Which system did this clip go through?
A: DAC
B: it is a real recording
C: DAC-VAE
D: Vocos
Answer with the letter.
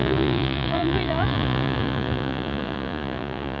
D